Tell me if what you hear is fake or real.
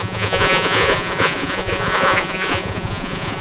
fake